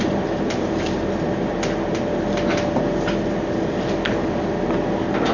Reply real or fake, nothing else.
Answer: real